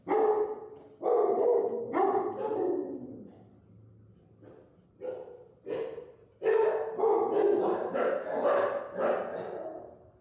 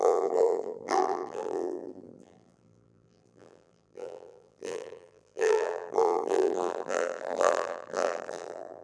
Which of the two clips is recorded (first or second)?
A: first